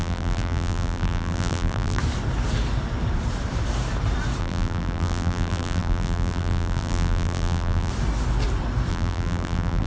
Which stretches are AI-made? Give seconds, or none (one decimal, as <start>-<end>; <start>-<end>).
0.0-2.0; 4.4-7.9; 8.9-9.9